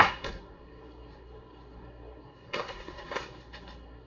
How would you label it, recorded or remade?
remade